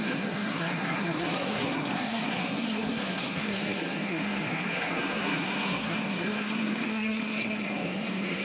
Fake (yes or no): yes